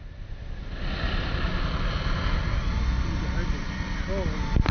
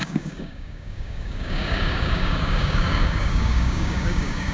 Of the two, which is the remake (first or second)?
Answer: second